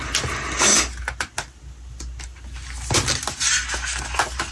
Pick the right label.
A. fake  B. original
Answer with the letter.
B